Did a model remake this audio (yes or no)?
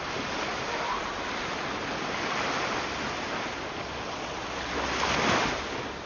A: no